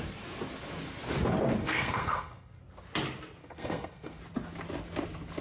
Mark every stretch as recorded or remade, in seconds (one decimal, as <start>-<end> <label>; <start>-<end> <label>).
0.0-1.6 recorded; 1.6-2.6 remade; 2.6-3.4 recorded; 3.4-4.2 remade; 4.2-5.4 recorded

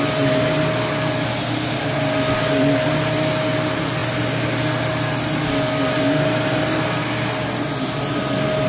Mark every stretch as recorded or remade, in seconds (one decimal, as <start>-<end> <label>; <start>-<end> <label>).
0.0-8.7 recorded